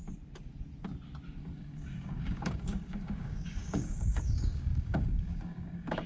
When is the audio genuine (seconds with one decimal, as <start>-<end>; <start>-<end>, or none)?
0.0-1.4

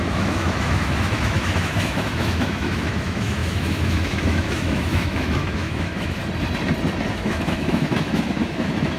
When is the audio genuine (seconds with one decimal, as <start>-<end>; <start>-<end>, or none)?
6.2-7.1

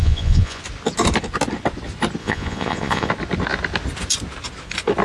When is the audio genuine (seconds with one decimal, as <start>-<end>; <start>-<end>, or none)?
0.6-2.2; 3.1-5.0

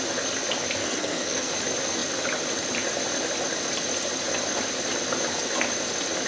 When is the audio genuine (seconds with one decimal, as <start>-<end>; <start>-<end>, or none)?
0.0-0.8; 1.5-6.3